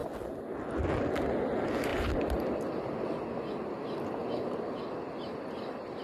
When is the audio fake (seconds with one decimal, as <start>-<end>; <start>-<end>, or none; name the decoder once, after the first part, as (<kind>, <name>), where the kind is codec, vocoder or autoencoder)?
none

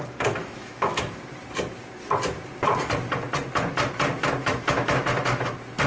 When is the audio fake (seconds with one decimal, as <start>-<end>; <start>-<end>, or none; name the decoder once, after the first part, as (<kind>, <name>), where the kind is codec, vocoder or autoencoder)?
0.4-1.2 (autoencoder, DAC-VAE); 4.4-5.5